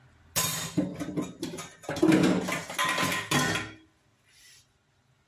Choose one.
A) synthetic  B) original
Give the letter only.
B